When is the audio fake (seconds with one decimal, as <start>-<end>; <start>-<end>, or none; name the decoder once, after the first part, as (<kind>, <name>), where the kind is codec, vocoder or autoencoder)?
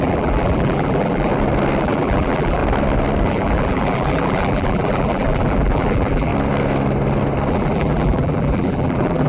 0.0-1.3 (vocoder, BigVGAN v2); 1.8-2.6; 3.2-6.3; 7.5-9.3